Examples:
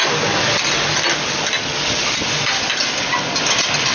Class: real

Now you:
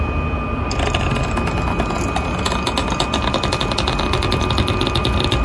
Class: real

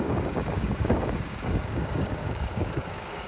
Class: fake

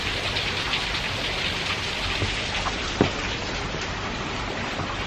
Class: real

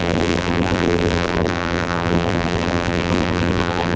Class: fake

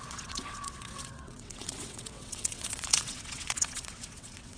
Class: fake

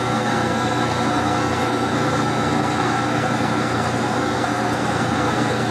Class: fake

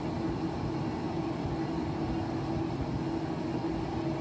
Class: real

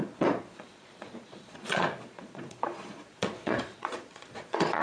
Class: fake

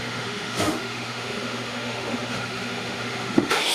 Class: fake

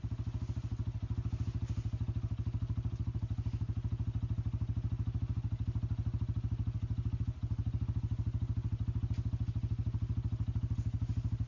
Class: real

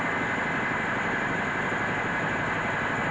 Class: real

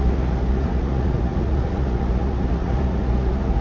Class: fake